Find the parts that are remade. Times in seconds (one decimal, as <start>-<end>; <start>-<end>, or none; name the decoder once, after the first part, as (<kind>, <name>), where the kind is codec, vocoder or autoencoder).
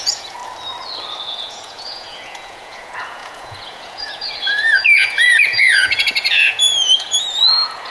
0.0-0.4 (vocoder, Vocos); 1.2-7.9